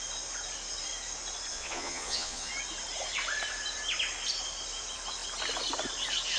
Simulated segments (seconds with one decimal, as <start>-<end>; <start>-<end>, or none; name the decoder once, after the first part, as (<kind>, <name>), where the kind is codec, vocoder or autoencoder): 1.5-2.5 (vocoder, Vocos)